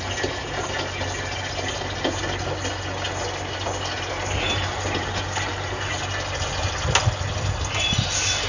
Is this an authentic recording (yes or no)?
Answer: yes